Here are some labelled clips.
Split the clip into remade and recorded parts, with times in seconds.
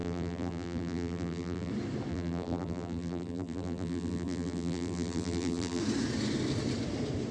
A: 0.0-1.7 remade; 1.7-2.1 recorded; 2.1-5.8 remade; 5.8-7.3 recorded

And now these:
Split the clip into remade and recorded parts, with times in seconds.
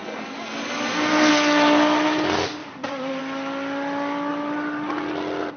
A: 0.0-2.6 recorded; 2.6-3.2 remade; 3.2-5.6 recorded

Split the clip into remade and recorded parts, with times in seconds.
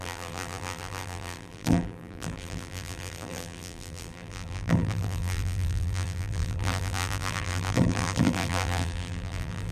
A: 0.0-9.7 remade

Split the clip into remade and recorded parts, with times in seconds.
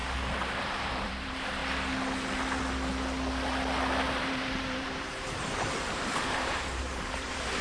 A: 0.0-0.6 recorded; 0.6-1.6 remade; 1.6-4.2 recorded; 4.2-7.6 remade